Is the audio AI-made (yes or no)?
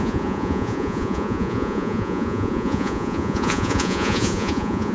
yes